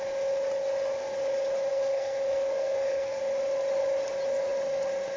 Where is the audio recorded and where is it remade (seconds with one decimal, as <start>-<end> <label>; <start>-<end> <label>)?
0.0-1.7 recorded; 1.7-3.2 remade; 3.2-5.2 recorded